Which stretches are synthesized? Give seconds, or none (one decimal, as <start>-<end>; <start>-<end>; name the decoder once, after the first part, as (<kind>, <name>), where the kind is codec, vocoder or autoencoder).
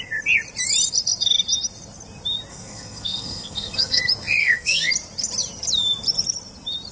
2.5-4.0 (codec, SNAC); 4.4-4.9